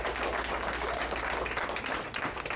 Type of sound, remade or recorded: recorded